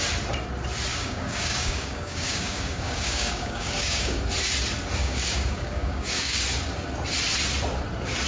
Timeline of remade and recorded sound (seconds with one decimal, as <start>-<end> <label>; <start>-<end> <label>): 0.0-0.9 recorded; 0.9-4.2 remade; 4.2-5.0 recorded; 5.0-6.4 remade; 6.4-8.3 recorded